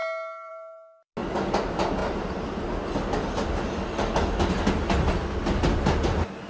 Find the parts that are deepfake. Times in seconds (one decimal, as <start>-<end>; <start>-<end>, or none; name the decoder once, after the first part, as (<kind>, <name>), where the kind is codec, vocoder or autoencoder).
none